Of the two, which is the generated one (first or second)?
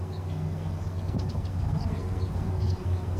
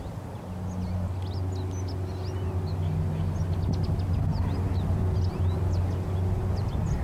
first